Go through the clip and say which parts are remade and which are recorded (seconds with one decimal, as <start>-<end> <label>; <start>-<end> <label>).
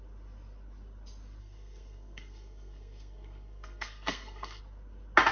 0.0-1.4 recorded; 1.4-4.6 remade; 4.6-5.3 recorded